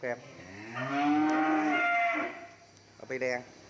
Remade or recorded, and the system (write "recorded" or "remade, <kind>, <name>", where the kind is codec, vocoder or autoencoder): recorded